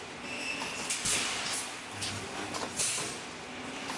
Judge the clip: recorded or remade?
recorded